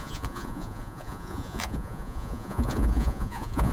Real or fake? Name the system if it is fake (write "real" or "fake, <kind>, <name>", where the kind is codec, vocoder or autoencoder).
fake, vocoder, Vocos